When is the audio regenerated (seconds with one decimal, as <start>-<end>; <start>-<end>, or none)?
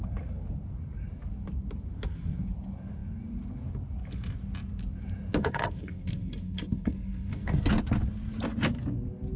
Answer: 5.4-7.7